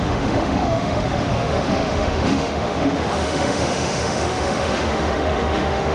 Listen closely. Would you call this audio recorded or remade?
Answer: remade